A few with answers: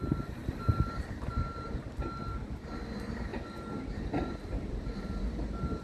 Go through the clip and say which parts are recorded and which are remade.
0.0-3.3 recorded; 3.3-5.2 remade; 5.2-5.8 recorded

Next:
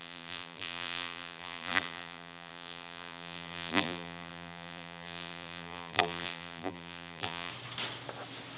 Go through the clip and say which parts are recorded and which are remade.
0.0-7.5 remade; 7.5-8.6 recorded